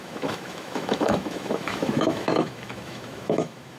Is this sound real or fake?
fake